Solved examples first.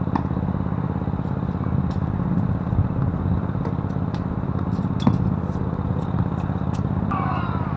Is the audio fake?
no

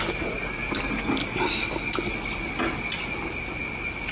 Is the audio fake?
no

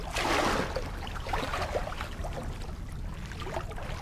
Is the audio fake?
no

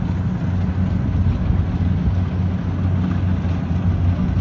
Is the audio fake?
no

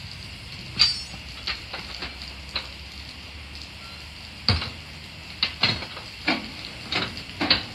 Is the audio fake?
no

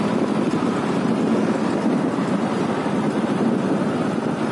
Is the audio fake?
no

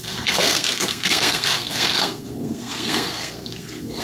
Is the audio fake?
yes